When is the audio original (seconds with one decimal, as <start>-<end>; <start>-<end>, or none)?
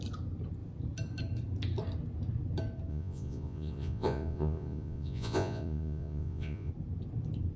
0.0-2.9; 6.7-7.6